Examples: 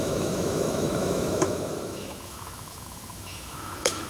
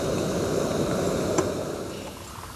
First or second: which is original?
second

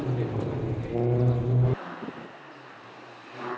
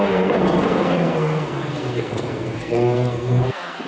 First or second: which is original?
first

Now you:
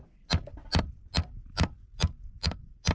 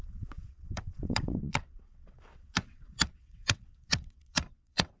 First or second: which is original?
first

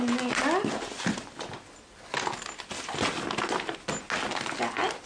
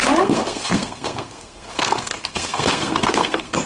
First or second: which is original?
first